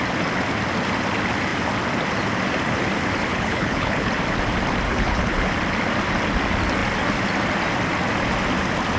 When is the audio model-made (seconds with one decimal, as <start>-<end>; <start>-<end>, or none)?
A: 3.3-4.1; 4.9-5.5